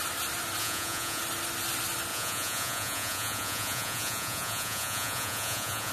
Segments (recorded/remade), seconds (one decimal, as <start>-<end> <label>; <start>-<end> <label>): 0.0-0.6 recorded; 0.6-1.2 remade; 1.2-2.1 recorded; 2.1-5.9 remade